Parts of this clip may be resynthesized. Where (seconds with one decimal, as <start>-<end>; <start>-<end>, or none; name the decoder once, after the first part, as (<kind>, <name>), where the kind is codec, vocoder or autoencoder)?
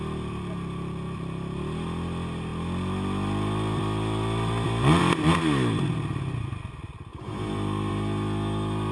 none